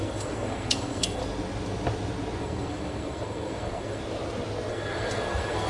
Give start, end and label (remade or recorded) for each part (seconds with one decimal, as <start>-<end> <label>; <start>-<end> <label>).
0.0-1.2 remade; 1.2-2.4 recorded; 2.4-4.0 remade; 4.0-4.7 recorded; 4.7-5.7 remade